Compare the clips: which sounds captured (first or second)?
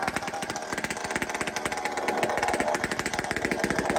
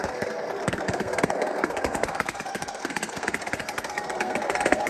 first